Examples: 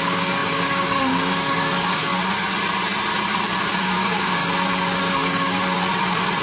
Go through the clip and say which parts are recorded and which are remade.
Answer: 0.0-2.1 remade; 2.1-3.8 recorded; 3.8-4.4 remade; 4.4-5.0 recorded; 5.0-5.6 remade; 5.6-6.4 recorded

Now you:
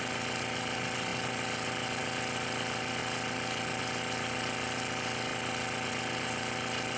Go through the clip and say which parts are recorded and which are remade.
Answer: 0.0-7.0 recorded

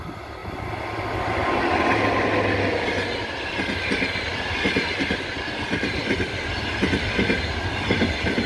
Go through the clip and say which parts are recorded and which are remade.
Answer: 0.0-8.5 recorded